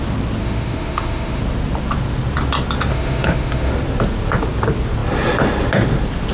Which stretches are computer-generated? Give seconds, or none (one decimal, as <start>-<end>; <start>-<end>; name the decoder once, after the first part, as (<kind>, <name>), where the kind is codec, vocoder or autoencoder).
0.4-1.4 (autoencoder, DAC-VAE); 2.9-3.7